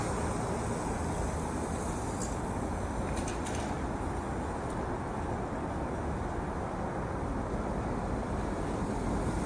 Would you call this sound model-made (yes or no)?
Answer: no